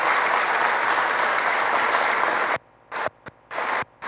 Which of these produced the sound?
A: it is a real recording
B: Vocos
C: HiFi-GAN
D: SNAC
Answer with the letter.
A